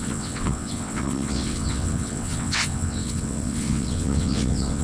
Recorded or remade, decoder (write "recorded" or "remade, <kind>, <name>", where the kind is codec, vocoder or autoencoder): remade, vocoder, WaveNeXt